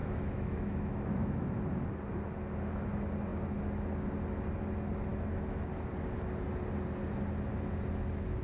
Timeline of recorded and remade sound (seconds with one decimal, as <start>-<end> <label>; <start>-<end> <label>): 0.0-1.6 remade; 1.6-5.1 recorded; 5.1-5.7 remade; 5.7-8.4 recorded